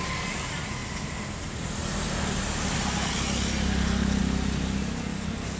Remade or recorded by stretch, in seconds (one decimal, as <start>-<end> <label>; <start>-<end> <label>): 0.0-5.1 recorded; 5.1-5.6 remade